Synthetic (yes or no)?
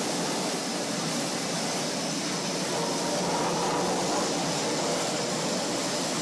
no